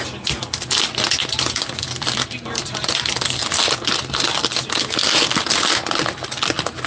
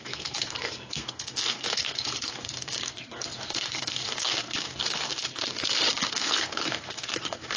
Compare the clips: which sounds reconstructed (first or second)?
second